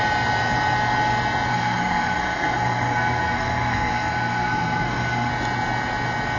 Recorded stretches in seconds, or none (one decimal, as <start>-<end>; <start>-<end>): 0.0-1.5; 5.3-6.4